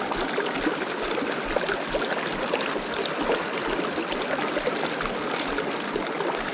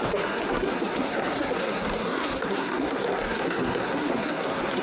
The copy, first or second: second